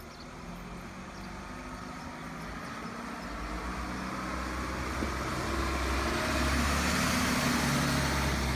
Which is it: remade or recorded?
recorded